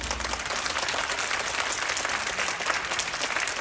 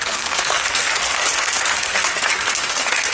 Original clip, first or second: first